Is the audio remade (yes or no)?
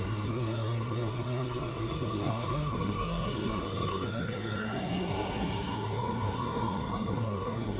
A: yes